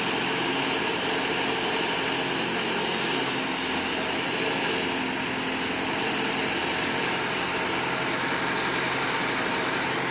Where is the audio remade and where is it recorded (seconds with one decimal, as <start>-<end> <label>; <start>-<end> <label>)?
0.0-6.6 recorded; 6.6-7.4 remade; 7.4-10.1 recorded